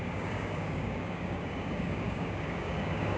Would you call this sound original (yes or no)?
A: no